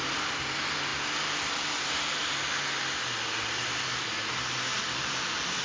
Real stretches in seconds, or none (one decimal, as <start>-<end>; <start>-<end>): 0.0-5.6